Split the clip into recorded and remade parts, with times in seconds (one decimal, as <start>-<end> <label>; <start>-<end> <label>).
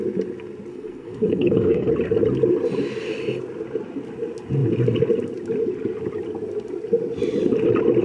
0.0-0.7 recorded; 0.7-1.9 remade; 1.9-8.0 recorded